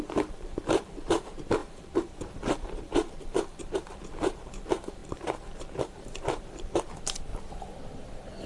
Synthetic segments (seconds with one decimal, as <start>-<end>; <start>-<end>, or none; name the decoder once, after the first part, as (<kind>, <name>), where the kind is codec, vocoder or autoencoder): 0.0-7.3 (vocoder, BigVGAN v2)